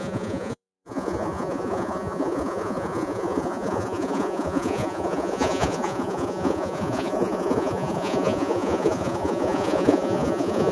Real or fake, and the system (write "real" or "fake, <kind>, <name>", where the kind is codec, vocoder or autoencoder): fake, vocoder, Vocos